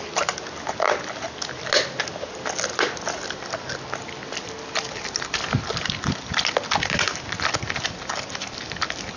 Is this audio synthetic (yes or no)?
no